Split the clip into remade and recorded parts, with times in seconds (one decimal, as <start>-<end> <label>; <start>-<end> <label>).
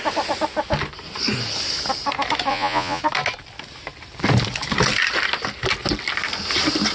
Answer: 0.0-2.5 recorded; 2.5-3.0 remade; 3.0-6.9 recorded